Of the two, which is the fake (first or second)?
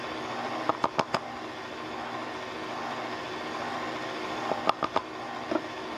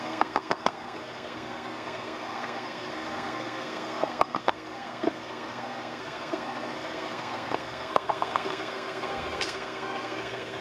second